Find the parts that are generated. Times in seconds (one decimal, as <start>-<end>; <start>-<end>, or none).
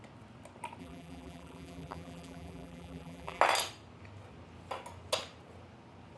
0.8-3.4